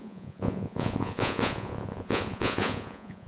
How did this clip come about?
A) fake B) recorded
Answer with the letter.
A